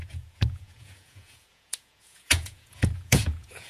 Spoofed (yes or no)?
yes